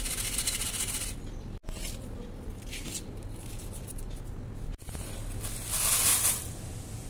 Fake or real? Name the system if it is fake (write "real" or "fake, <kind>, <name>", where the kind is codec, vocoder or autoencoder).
real